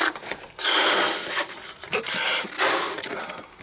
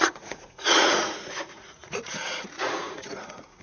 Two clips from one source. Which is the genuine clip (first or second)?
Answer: first